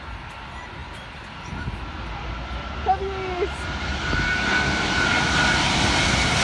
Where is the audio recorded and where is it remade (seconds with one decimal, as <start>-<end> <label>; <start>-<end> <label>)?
0.0-6.4 recorded